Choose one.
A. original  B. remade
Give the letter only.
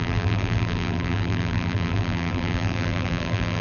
B